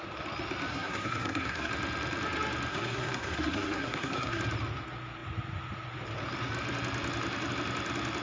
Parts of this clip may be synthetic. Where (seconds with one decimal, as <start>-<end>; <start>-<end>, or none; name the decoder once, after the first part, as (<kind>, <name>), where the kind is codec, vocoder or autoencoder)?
0.7-1.7 (codec, SNAC); 2.7-4.4